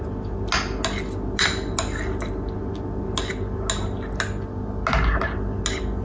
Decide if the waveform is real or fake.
real